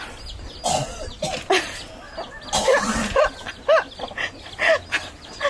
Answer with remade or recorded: recorded